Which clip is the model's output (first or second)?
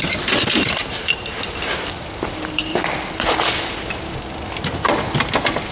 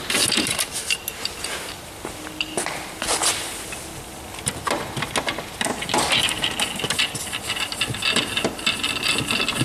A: first